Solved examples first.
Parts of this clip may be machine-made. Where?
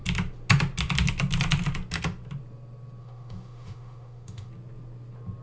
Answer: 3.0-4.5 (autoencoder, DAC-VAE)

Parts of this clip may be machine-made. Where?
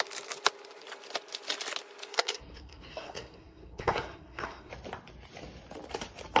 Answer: 2.1-4.7 (codec, SNAC)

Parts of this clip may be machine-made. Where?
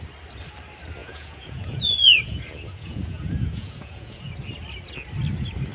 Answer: 1.0-4.3 (vocoder, Vocos)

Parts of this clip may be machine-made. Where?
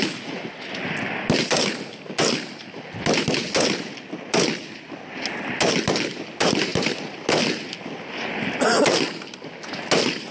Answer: none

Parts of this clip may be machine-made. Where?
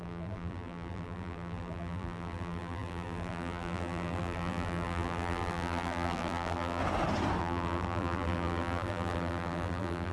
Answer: 0.0-6.8 (vocoder, BigVGAN v2); 7.4-10.1